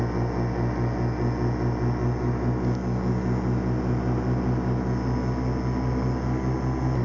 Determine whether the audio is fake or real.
real